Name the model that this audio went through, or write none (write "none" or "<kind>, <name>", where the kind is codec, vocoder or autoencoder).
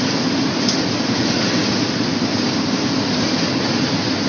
none